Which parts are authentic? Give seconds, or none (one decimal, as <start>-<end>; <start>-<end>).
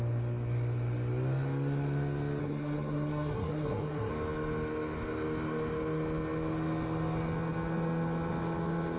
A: 0.0-2.4; 4.1-9.0